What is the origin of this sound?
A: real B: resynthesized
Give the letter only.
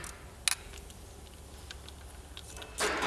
A